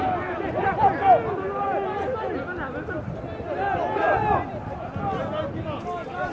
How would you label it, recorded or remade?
recorded